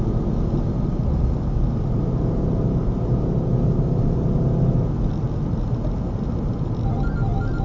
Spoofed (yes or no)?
no